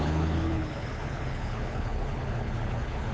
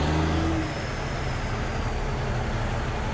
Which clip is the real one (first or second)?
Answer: second